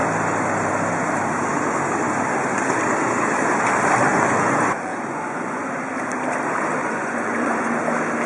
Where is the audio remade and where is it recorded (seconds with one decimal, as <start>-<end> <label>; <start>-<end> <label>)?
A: 0.0-4.1 recorded; 4.1-5.6 remade; 5.6-6.8 recorded; 6.8-7.8 remade; 7.8-8.3 recorded